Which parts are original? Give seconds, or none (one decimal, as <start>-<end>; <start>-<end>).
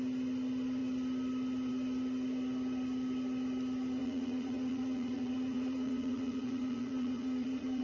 0.0-4.0